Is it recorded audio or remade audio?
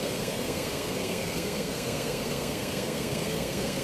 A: remade